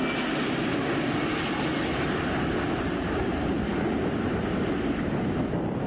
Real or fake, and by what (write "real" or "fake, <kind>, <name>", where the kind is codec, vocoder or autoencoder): real